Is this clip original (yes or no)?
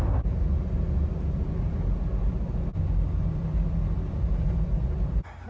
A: yes